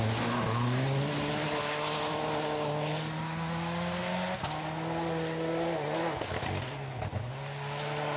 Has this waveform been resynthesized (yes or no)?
no